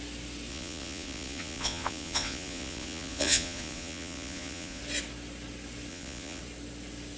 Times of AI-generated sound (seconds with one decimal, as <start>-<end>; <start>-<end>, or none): 0.5-4.8; 5.9-6.4